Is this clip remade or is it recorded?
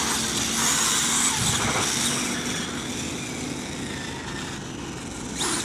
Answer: recorded